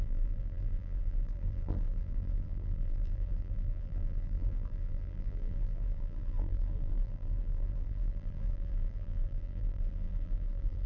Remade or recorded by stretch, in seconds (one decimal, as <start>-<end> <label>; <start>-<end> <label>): 0.0-10.9 remade